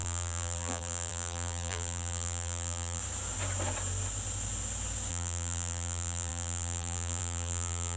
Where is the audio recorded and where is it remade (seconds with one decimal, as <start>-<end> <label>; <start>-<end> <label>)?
0.0-3.0 remade; 3.0-5.1 recorded; 5.1-8.0 remade